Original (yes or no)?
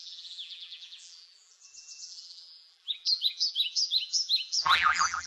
no